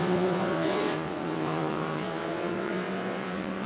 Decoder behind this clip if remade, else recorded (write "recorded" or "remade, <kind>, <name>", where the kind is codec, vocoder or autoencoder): remade, vocoder, WaveNeXt